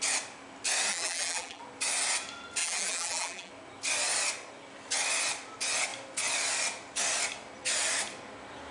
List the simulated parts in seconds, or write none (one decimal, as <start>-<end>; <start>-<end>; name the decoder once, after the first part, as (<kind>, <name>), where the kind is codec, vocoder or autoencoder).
0.9-1.6 (vocoder, BigVGAN v2); 2.6-3.5